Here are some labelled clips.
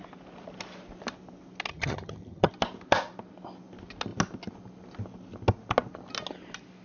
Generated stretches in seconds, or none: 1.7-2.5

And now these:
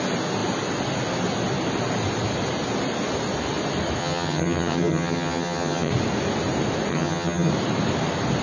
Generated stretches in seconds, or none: 4.0-5.9; 6.9-7.5

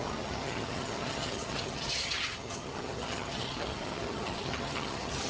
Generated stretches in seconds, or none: 0.0-5.3

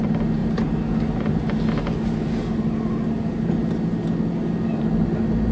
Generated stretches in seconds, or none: none